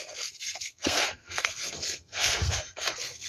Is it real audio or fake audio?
fake